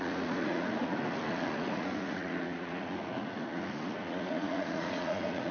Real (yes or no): no